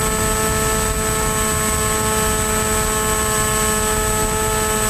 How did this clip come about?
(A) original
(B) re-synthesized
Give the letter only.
A